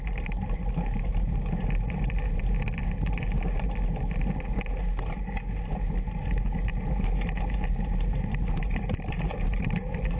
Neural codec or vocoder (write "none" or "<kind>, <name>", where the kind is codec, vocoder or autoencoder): none